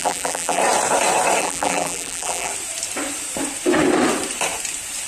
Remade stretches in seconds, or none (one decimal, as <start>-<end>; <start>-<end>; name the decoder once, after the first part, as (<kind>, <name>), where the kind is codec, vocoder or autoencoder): 0.0-0.6 (vocoder, BigVGAN v2); 1.4-2.5